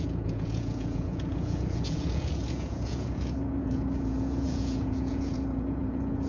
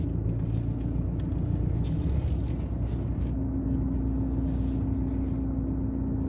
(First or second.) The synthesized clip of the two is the first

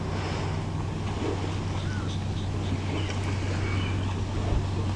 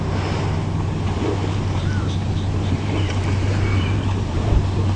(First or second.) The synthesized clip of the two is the second